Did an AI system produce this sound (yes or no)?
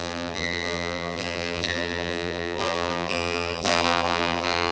yes